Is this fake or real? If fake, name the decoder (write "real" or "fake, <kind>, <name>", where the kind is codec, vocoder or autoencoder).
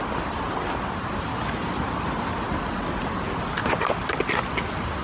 real